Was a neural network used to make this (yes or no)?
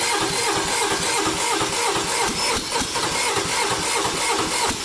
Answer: no